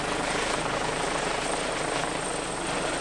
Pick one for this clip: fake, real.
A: real